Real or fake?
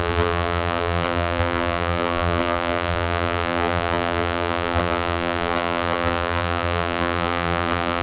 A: fake